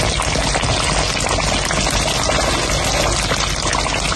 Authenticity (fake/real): real